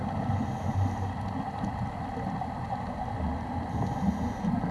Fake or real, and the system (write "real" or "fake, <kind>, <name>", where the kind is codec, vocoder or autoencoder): real